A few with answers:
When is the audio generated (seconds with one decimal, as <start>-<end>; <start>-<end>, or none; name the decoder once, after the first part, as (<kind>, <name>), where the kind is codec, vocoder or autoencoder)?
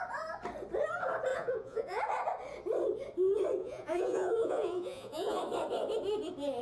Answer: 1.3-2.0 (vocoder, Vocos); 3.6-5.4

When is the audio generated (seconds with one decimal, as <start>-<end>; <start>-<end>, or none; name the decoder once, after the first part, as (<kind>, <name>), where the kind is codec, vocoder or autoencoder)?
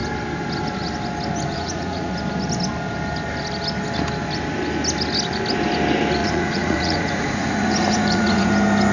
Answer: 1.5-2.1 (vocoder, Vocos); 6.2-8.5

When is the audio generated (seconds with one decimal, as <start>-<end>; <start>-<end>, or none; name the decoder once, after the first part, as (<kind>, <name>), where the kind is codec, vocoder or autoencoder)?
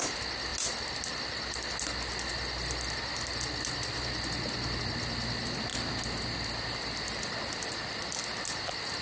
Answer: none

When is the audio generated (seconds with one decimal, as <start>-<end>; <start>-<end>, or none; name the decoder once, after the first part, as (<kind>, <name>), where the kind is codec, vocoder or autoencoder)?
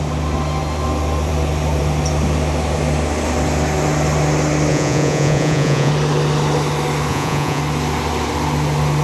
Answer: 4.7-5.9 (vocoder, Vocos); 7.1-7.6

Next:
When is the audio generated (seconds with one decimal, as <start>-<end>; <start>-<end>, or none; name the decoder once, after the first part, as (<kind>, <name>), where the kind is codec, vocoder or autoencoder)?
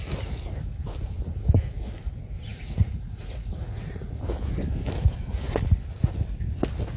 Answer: 2.5-4.2 (vocoder, Vocos)